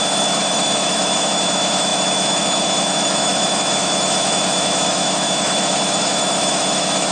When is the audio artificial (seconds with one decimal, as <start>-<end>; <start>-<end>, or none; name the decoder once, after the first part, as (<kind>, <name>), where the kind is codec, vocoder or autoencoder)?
0.0-7.1 (autoencoder, DAC-VAE)